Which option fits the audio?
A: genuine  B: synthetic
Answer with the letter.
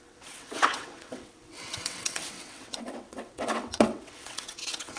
B